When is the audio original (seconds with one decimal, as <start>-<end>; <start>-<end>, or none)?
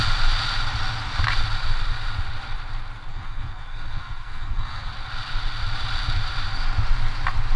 0.0-3.1; 4.9-7.6